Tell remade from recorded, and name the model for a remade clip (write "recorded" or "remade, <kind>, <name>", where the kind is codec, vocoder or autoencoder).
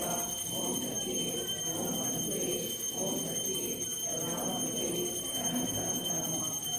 recorded